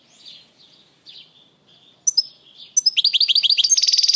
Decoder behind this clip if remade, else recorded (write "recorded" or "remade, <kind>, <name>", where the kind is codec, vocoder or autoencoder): recorded